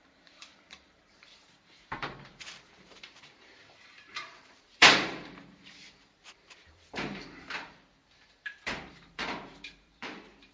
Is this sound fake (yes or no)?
yes